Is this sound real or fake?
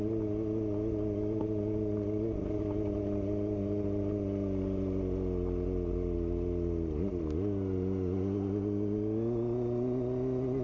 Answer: real